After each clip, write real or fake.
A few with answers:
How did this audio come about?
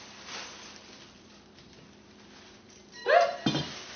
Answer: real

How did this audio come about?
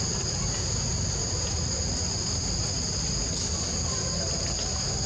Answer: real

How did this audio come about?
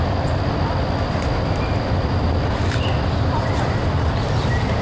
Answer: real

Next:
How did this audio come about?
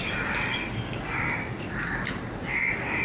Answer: real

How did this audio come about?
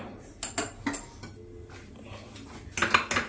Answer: real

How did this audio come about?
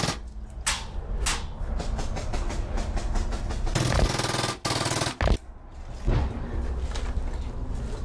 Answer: real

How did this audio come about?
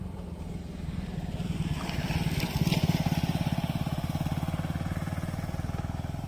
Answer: real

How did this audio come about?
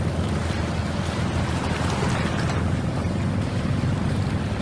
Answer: real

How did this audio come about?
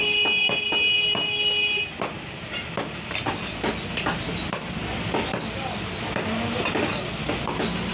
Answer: real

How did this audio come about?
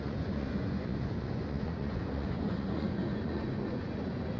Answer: fake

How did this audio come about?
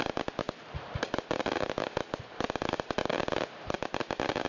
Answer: real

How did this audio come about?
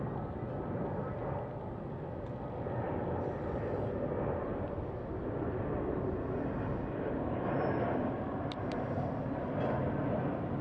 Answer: real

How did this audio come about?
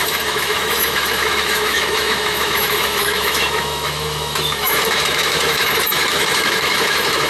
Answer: fake